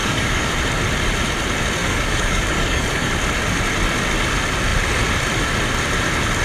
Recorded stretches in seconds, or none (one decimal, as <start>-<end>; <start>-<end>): 0.5-1.8; 3.1-6.4